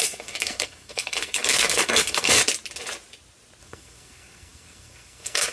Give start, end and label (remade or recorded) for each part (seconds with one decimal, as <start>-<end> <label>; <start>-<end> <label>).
0.0-2.4 remade; 2.4-3.6 recorded; 3.6-5.5 remade